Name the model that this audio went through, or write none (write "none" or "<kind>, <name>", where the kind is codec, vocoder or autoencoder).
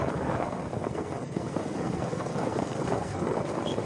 codec, SNAC